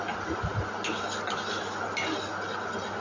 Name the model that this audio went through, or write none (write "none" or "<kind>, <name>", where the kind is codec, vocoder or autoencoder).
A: none